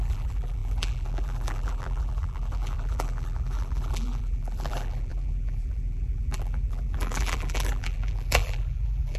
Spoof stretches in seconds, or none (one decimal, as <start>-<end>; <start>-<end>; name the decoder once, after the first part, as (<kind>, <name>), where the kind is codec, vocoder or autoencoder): 0.0-9.2 (vocoder, BigVGAN v2)